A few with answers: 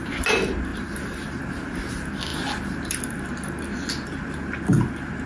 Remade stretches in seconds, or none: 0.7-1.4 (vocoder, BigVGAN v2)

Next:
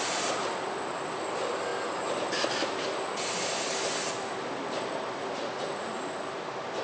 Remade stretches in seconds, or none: none

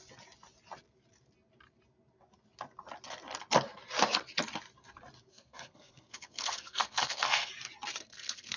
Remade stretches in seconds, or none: 5.3-7.5 (codec, SNAC); 7.9-8.6